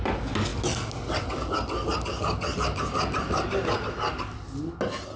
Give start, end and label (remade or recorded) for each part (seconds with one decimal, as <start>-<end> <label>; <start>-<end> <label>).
0.0-5.2 recorded